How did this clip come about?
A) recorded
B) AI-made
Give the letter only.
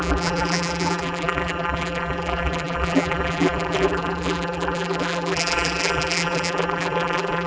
B